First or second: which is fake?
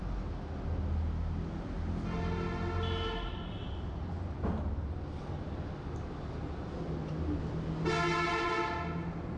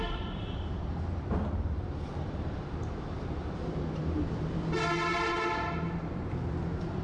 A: second